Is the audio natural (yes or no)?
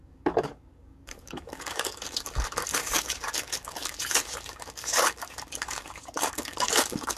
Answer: no